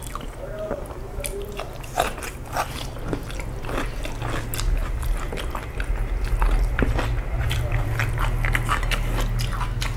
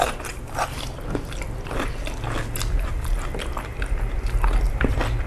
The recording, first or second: first